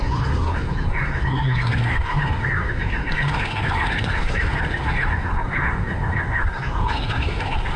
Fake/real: fake